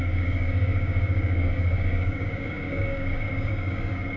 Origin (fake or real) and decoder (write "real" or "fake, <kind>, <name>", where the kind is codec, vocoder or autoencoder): fake, codec, DAC